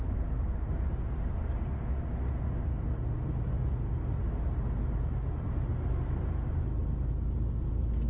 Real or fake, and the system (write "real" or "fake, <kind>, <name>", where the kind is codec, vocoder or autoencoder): real